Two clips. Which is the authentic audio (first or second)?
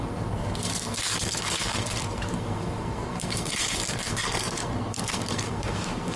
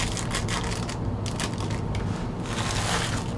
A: second